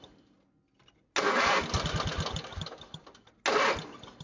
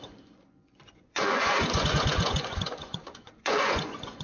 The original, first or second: first